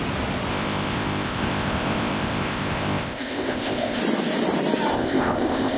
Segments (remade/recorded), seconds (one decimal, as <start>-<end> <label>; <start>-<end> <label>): 0.0-0.5 recorded; 0.5-4.0 remade; 4.0-4.9 recorded; 4.9-5.8 remade